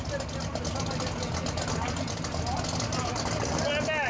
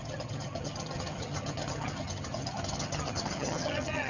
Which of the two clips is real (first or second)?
first